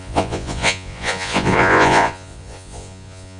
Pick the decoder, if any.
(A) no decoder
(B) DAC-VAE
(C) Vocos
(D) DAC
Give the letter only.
C